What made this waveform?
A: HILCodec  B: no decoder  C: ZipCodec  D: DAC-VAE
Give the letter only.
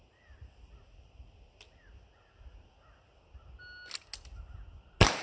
B